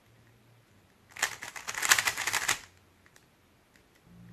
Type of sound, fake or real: real